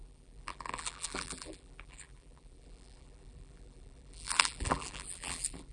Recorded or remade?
remade